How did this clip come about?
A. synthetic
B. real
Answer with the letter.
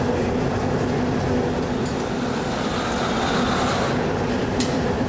A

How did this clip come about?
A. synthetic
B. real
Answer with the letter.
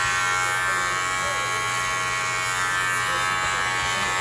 B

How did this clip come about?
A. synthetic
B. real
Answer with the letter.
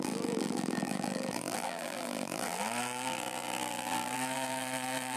A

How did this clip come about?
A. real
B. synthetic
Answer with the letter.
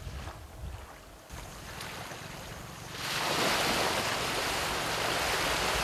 A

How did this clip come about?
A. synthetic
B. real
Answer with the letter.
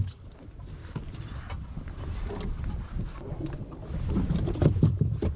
A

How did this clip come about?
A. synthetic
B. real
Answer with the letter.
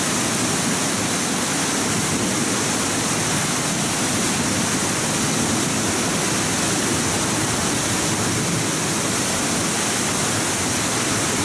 B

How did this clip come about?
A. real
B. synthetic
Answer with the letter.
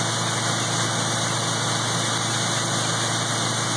A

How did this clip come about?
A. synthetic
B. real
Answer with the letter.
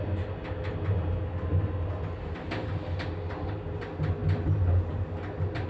B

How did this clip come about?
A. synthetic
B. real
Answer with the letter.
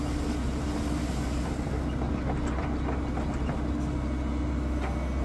B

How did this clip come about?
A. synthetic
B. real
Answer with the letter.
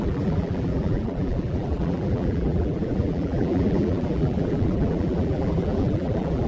A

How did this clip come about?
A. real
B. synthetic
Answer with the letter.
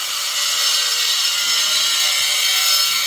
A